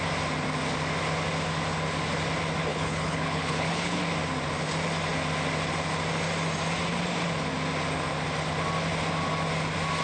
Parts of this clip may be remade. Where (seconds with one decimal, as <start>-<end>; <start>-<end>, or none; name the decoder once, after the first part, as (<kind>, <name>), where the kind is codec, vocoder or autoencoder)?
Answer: 2.7-4.0 (codec, HILCodec)